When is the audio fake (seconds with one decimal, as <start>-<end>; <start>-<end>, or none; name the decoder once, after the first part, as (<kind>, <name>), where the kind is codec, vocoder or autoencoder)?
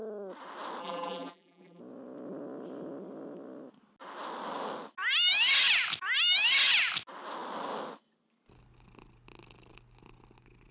0.8-1.8 (vocoder, BigVGAN v2)